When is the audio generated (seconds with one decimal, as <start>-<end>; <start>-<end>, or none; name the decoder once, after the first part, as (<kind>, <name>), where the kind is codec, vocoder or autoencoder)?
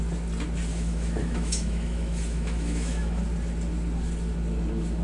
0.7-3.2 (autoencoder, DAC-VAE)